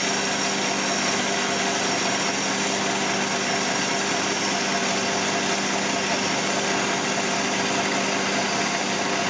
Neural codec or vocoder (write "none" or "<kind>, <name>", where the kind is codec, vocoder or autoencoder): none